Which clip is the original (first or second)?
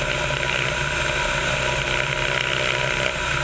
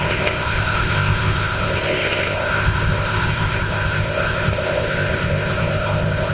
first